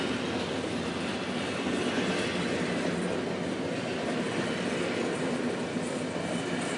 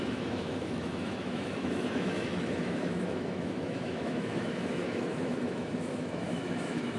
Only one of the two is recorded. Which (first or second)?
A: first